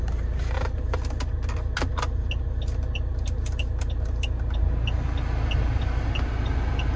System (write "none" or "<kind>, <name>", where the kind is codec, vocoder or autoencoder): none